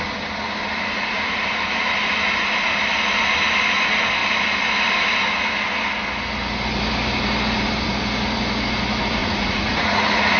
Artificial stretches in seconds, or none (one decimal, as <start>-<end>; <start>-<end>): 9.2-10.4